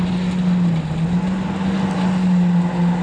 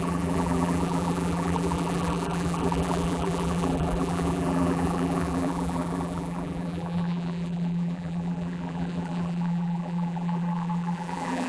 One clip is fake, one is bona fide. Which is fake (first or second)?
second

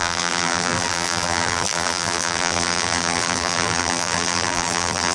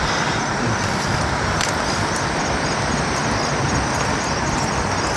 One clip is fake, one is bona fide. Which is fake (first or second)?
first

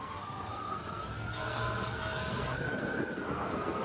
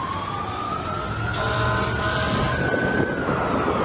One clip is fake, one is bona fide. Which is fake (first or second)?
first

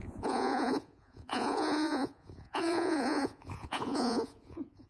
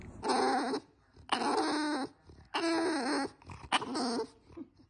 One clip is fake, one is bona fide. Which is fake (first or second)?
first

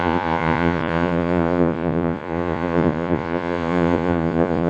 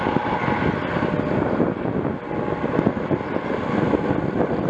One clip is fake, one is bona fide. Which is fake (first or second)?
first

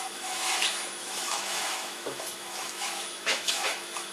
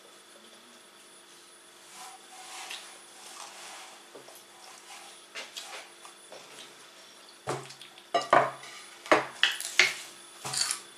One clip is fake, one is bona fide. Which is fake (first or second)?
first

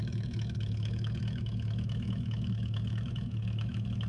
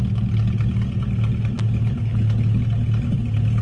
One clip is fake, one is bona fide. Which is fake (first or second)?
first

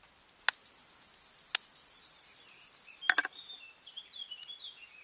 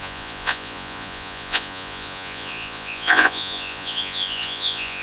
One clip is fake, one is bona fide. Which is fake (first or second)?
second